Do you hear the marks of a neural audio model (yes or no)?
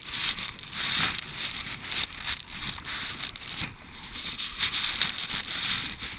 no